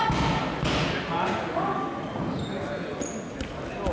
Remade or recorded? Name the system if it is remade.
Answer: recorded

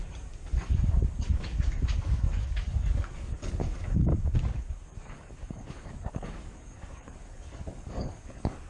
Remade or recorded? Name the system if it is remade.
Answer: remade, codec, DAC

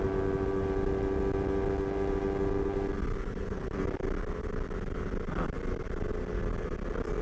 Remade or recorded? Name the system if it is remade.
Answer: recorded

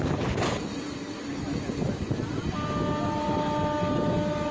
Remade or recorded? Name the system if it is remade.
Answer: recorded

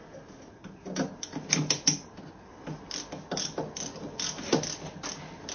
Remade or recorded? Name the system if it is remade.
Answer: recorded